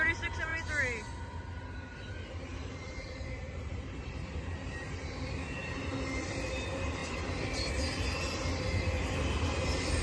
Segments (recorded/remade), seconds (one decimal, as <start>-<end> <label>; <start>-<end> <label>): 0.0-2.5 recorded; 2.5-5.9 remade; 5.9-10.0 recorded